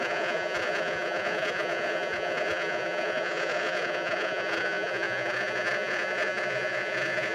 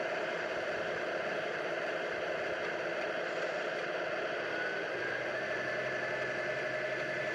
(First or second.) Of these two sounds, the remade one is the first